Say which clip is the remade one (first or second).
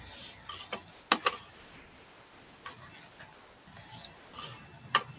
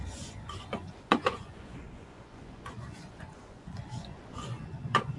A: second